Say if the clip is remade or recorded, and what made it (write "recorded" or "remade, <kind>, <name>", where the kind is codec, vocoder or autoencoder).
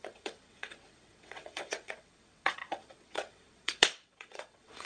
remade, vocoder, WaveNeXt